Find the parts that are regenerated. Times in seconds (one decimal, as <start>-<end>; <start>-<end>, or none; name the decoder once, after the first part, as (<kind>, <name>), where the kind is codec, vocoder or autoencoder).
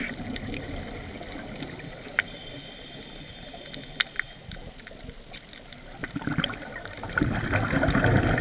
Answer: none